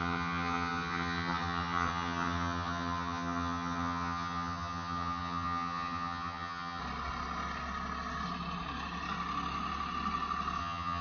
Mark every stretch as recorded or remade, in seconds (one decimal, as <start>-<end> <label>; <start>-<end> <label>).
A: 0.0-6.8 remade; 6.8-10.6 recorded; 10.6-11.0 remade